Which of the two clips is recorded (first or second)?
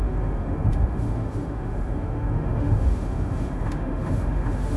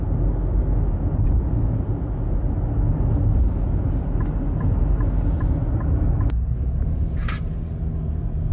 second